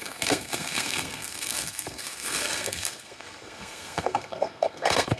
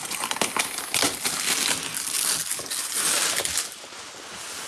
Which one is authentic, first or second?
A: second